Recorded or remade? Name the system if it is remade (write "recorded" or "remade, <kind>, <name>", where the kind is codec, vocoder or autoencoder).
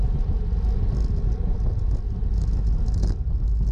recorded